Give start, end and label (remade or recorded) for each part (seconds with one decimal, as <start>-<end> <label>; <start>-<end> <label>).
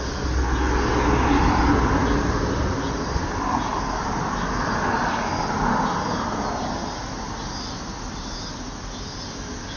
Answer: 0.0-9.8 recorded